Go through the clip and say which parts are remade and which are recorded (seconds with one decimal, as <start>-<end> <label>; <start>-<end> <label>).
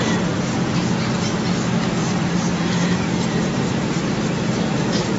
0.0-2.0 recorded; 2.0-5.2 remade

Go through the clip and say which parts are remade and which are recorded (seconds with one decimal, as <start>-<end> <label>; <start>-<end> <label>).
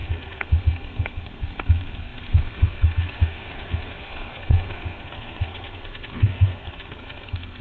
0.0-7.6 remade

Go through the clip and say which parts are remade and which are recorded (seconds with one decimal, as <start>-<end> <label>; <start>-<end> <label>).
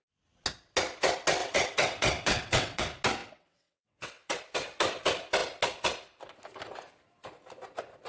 0.0-1.4 recorded; 1.4-2.8 remade; 2.8-3.2 recorded; 3.2-4.4 remade; 4.4-8.1 recorded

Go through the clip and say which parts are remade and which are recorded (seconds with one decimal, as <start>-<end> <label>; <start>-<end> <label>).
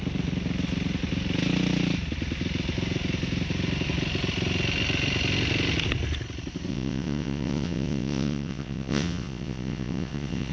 0.0-6.7 recorded; 6.7-10.5 remade